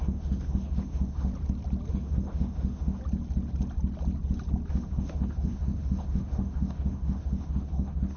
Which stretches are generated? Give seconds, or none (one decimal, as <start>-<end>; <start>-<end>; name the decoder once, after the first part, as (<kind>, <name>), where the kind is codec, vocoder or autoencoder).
0.0-1.3 (autoencoder, DAC-VAE); 1.9-3.0; 4.7-8.2